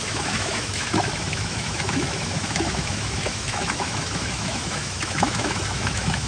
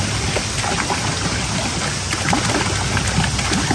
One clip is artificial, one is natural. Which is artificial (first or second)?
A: first